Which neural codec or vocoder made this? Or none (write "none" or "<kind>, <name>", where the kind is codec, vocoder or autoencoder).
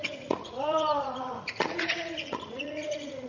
vocoder, Vocos